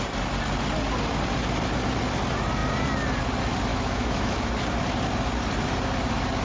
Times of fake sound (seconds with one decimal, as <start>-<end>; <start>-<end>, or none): 3.7-4.5

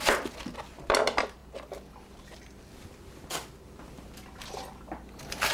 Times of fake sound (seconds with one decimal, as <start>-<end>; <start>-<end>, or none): none

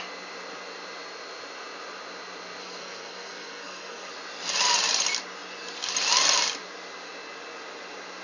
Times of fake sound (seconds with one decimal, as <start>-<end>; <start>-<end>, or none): 2.6-4.1

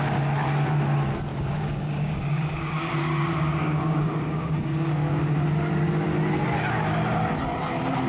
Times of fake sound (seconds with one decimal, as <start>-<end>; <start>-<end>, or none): 1.3-5.2